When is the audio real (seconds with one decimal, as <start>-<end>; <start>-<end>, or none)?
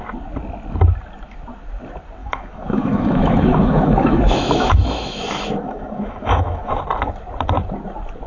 0.0-2.2; 6.7-8.3